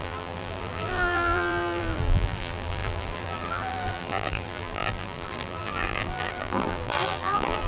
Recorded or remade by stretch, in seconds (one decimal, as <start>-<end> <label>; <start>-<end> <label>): 0.0-7.7 remade